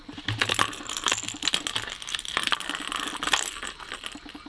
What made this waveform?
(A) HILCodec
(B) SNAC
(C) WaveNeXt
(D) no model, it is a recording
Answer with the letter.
D